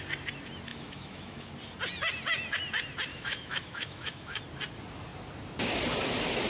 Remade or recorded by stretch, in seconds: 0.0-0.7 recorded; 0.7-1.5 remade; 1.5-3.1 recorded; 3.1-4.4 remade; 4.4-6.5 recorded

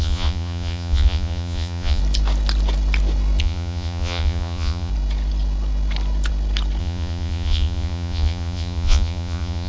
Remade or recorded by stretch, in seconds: 0.0-2.0 remade; 2.0-3.4 recorded; 3.4-4.9 remade; 4.9-6.8 recorded; 6.8-9.7 remade

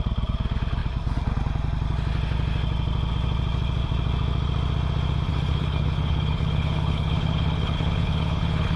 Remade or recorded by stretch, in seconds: 0.0-5.3 recorded; 5.3-8.8 remade

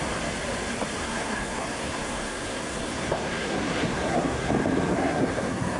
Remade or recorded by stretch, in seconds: 0.0-1.0 recorded; 1.0-4.5 remade; 4.5-5.0 recorded; 5.0-5.8 remade

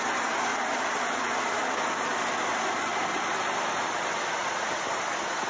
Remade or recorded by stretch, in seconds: 0.0-4.4 recorded; 4.4-5.0 remade; 5.0-5.5 recorded

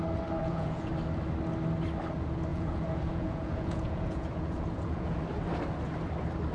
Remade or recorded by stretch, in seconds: 0.0-0.4 recorded; 0.4-0.9 remade; 0.9-2.5 recorded; 2.5-5.2 remade; 5.2-6.5 recorded